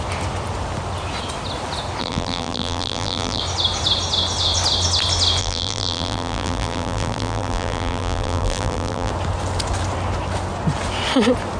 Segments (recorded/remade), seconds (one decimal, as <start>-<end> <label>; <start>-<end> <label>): 0.0-2.0 recorded; 2.0-3.4 remade; 3.4-5.4 recorded; 5.4-9.1 remade; 9.1-11.6 recorded